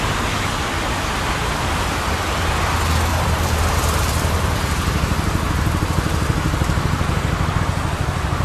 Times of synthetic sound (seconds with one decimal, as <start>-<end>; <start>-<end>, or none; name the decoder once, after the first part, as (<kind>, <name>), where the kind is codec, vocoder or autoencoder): 3.1-7.6 (vocoder, BigVGAN v2)